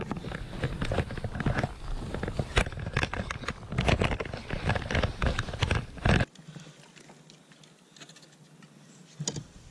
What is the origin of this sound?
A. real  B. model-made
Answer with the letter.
A